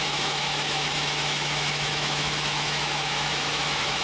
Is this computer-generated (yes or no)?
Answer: yes